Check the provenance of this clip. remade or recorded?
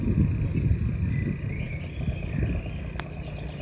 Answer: recorded